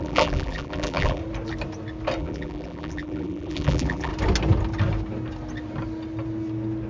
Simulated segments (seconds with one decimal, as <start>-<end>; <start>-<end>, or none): 0.0-1.2; 2.2-4.1